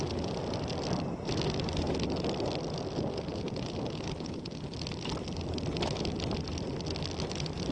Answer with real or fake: real